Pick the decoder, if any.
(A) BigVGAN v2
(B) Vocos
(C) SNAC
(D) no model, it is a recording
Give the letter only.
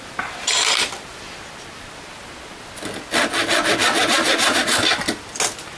D